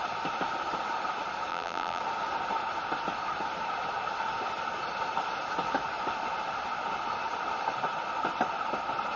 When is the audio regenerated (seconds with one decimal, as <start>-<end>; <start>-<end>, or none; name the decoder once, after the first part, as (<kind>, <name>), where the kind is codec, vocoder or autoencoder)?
1.5-2.0 (vocoder, BigVGAN v2)